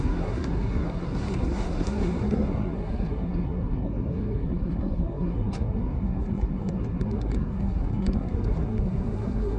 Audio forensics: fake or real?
fake